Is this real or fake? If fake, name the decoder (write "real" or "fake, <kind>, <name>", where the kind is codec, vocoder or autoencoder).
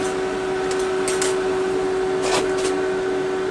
real